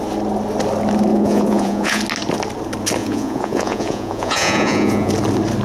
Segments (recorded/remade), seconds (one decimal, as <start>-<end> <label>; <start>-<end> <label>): 0.0-1.1 recorded; 1.1-2.0 remade; 2.0-3.0 recorded; 3.0-5.1 remade; 5.1-5.6 recorded